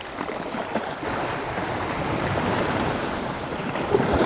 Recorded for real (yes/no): no